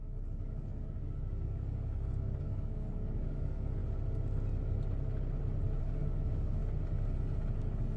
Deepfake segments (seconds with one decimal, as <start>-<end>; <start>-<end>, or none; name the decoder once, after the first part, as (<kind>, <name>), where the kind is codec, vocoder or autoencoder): 0.0-3.8 (codec, DAC); 5.8-6.6; 7.6-8.0